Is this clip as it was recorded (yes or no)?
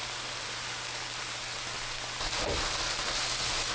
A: yes